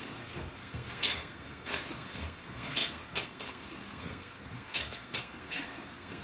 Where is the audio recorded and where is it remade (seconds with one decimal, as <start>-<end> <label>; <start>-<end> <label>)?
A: 0.0-6.2 remade